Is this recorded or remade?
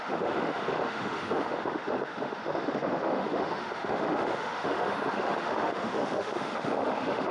remade